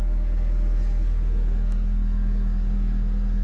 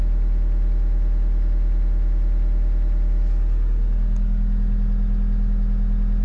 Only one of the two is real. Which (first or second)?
second